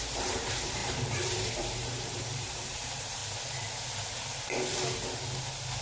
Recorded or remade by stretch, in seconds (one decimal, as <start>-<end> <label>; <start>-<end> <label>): 0.0-3.2 remade; 3.2-5.8 recorded